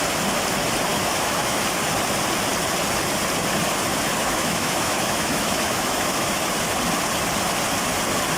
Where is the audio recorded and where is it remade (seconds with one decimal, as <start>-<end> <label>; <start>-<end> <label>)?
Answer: 0.0-0.9 recorded; 0.9-1.6 remade; 1.6-4.2 recorded; 4.2-6.4 remade; 6.4-8.4 recorded